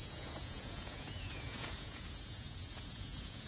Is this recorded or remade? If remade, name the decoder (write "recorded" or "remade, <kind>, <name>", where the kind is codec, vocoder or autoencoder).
remade, vocoder, Vocos